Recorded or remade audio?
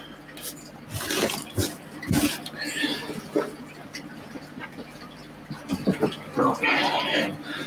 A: recorded